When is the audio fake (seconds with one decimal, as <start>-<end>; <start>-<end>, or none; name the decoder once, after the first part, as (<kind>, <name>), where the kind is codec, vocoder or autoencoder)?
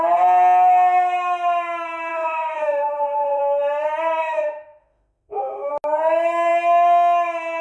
2.1-3.4 (autoencoder, DAC-VAE); 4.2-5.7